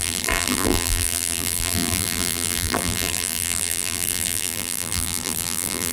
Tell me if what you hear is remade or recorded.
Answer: remade